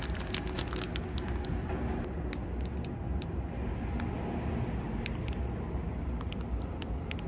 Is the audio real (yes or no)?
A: yes